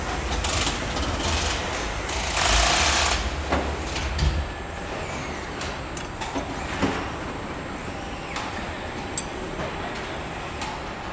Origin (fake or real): real